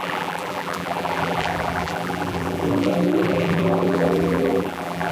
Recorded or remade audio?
remade